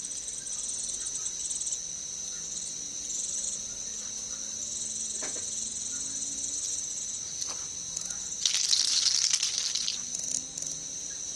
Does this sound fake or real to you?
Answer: real